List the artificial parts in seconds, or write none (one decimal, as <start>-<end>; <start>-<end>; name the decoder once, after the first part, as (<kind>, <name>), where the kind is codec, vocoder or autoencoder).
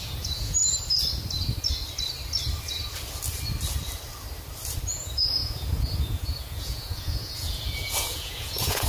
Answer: 0.0-0.6 (vocoder, Vocos); 4.9-8.9